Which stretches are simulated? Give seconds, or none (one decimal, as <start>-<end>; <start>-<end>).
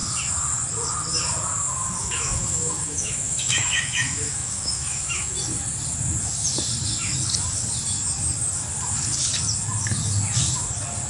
2.0-5.4